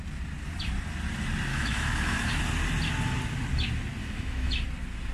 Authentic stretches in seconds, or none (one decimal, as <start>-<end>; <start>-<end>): 0.0-1.5; 2.4-4.0; 4.5-5.1